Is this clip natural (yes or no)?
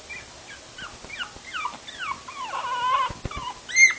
yes